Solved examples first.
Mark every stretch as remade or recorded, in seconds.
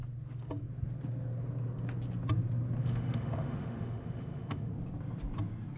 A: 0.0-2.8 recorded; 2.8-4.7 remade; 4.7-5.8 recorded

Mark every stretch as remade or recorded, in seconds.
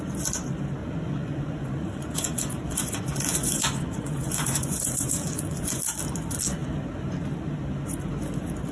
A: 0.0-0.8 recorded; 0.8-5.8 remade; 5.8-8.7 recorded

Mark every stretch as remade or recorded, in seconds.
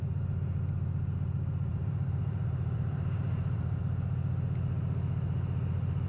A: 0.0-1.7 recorded; 1.7-3.8 remade; 3.8-6.1 recorded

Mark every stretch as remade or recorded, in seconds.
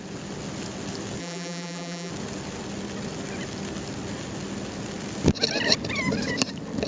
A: 0.0-1.2 recorded; 1.2-2.1 remade; 2.1-6.9 recorded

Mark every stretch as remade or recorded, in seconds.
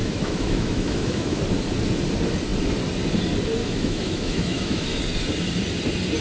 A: 0.0-1.4 remade; 1.4-3.6 recorded; 3.6-5.0 remade; 5.0-6.2 recorded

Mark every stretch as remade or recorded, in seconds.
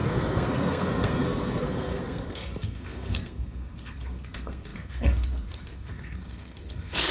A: 0.0-7.1 remade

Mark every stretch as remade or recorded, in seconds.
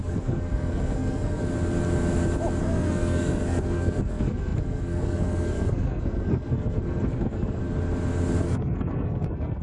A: 0.0-1.4 remade; 1.4-2.6 recorded; 2.6-7.6 remade; 7.6-8.4 recorded; 8.4-9.6 remade